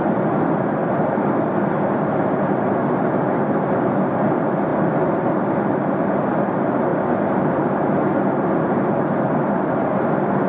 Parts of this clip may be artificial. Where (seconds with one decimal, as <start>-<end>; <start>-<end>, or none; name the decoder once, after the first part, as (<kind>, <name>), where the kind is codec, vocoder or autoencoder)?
none